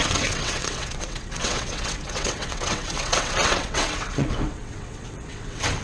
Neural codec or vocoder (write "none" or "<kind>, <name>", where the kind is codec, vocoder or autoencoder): vocoder, WaveNeXt